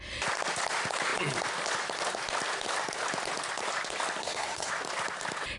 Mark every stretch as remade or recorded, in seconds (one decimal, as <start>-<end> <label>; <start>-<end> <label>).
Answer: 0.0-4.2 recorded; 4.2-4.7 remade; 4.7-5.6 recorded